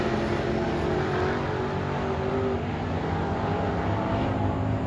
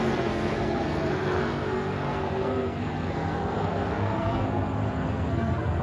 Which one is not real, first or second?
second